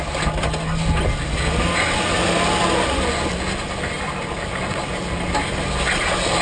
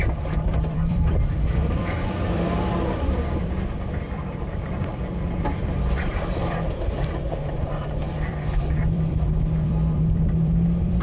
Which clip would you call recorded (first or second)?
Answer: first